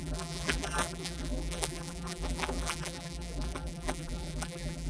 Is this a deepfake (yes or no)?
yes